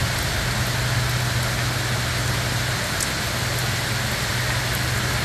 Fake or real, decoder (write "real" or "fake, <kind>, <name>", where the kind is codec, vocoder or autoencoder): real